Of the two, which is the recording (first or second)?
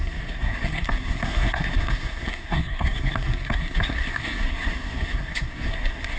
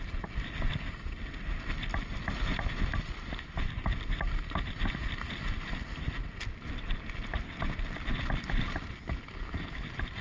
second